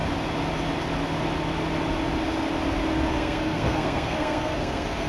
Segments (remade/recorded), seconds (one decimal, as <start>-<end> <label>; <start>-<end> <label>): 0.0-3.1 recorded; 3.1-5.1 remade